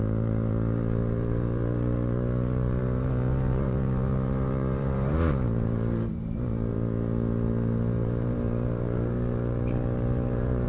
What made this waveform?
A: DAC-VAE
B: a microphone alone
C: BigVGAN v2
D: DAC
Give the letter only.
C